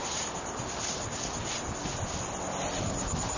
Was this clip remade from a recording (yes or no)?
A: no